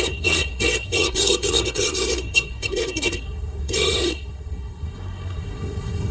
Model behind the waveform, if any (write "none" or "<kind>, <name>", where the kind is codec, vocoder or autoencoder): codec, SNAC